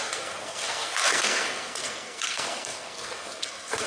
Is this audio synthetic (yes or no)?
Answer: yes